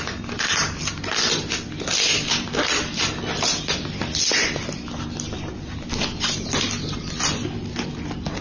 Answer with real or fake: real